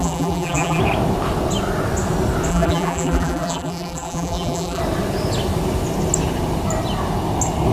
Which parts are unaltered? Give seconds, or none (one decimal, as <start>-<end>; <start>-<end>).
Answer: 0.8-2.5; 4.8-7.7